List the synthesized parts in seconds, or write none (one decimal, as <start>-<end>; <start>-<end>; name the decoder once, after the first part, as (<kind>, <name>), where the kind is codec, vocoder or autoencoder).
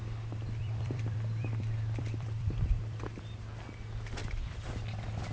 0.0-3.2 (vocoder, BigVGAN v2); 4.2-4.8